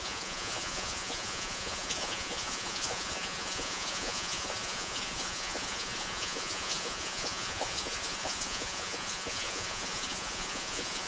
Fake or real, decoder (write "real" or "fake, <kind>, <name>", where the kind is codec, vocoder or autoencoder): fake, vocoder, Vocos